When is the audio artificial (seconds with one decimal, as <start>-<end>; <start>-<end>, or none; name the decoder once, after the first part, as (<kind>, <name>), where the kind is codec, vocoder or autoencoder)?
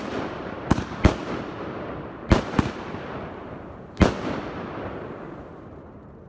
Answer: none